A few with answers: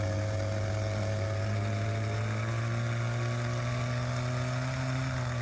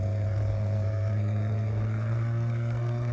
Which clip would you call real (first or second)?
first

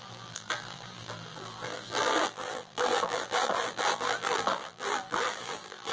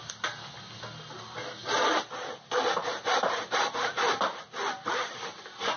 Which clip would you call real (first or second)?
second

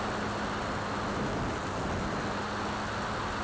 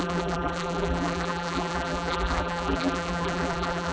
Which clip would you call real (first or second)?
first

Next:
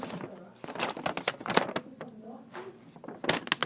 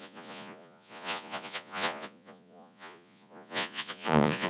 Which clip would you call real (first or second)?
first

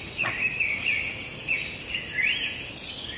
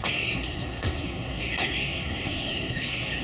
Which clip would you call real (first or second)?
first